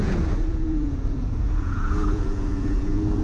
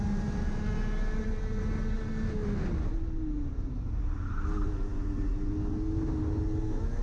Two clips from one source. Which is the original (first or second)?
second